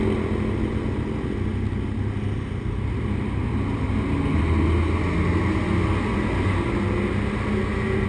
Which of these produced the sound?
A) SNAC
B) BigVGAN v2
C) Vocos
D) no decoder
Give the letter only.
D